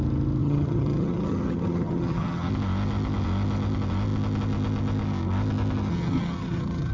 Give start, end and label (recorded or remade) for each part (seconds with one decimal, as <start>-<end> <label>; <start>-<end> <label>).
0.0-0.4 recorded; 0.4-2.5 remade; 2.5-5.9 recorded; 5.9-6.9 remade